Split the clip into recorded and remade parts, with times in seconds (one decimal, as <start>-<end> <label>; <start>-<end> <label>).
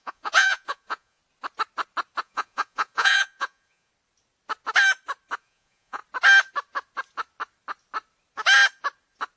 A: 0.0-1.2 remade; 1.2-2.2 recorded; 2.2-3.9 remade; 3.9-5.4 recorded; 5.4-6.0 remade; 6.0-9.4 recorded